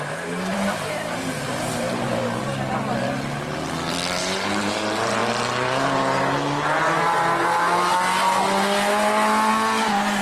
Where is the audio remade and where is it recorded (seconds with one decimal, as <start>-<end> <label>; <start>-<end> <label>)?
0.0-2.2 remade; 2.2-4.2 recorded; 4.2-5.2 remade; 5.2-10.2 recorded

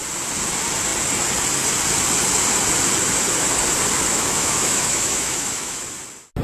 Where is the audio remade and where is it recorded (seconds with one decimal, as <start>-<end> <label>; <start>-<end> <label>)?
0.0-4.1 recorded; 4.1-5.8 remade; 5.8-6.4 recorded

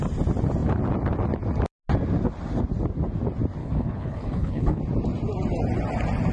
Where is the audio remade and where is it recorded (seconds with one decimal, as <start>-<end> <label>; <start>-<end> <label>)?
0.0-3.6 recorded; 3.6-4.8 remade; 4.8-6.3 recorded

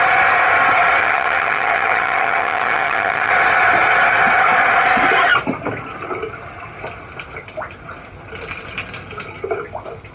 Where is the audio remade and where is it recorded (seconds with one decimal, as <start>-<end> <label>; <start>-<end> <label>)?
0.0-1.0 recorded; 1.0-3.3 remade; 3.3-10.1 recorded

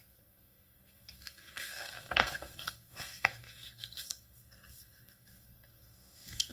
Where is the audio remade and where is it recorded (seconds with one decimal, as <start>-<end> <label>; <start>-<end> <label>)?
0.0-6.5 remade

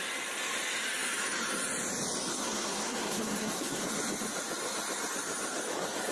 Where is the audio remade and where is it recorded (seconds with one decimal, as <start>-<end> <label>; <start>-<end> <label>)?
0.0-2.3 recorded; 2.3-3.8 remade; 3.8-6.1 recorded